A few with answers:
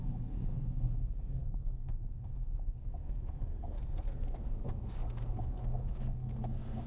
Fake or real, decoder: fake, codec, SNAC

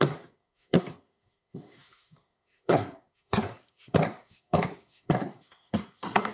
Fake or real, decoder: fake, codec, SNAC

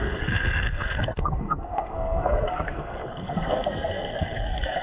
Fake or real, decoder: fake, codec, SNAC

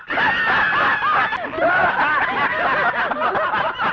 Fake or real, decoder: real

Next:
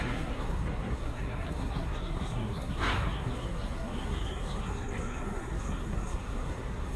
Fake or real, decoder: fake, codec, SNAC